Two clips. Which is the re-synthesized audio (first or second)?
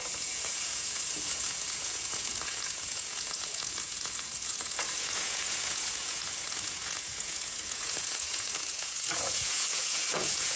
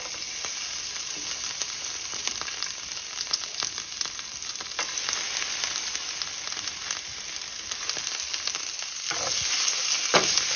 first